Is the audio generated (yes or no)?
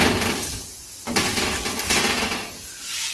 no